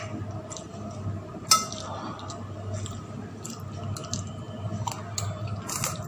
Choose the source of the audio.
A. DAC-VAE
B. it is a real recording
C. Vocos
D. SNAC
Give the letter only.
B